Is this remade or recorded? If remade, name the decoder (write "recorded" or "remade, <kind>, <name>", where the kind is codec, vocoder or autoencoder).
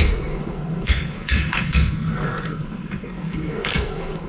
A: remade, codec, SNAC